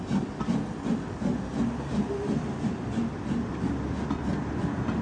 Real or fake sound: real